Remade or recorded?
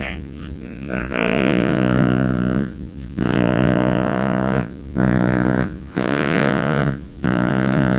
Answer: remade